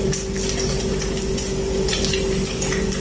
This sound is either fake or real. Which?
real